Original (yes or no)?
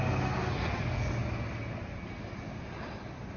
yes